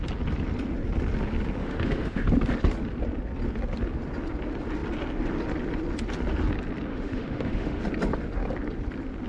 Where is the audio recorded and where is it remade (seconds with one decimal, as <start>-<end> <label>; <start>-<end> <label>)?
0.0-1.6 recorded; 1.6-2.2 remade; 2.2-6.9 recorded; 6.9-7.8 remade; 7.8-9.3 recorded